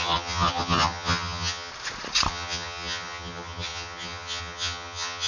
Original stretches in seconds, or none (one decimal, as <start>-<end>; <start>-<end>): 1.7-2.3